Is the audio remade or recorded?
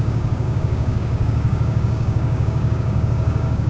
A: remade